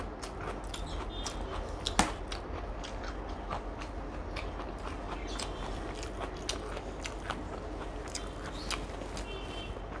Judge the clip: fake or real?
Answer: real